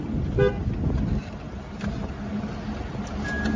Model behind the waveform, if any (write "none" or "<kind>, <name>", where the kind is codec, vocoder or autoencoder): none